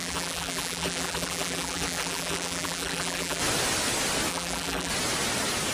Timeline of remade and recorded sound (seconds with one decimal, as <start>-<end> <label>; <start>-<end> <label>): 0.0-3.4 remade; 3.4-4.3 recorded; 4.3-4.9 remade; 4.9-5.7 recorded